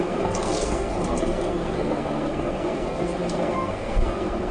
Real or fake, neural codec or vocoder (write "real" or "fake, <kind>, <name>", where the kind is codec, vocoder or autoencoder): fake, codec, SNAC